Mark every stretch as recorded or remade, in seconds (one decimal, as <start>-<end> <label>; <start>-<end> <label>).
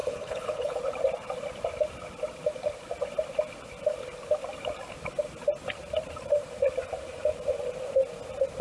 0.0-0.8 remade; 0.8-8.6 recorded